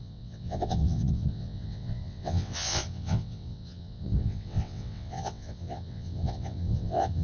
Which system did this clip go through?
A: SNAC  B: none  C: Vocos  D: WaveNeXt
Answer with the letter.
D